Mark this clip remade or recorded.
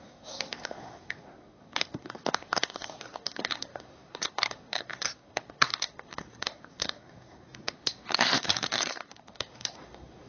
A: remade